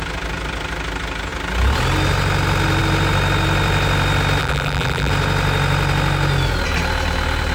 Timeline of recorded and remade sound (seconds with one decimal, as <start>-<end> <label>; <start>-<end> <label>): 0.0-4.4 recorded; 4.4-5.1 remade; 5.1-7.5 recorded